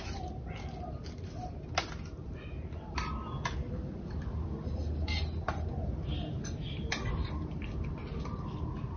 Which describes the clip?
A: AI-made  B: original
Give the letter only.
B